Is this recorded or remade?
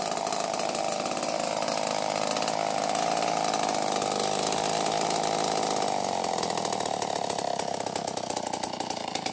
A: recorded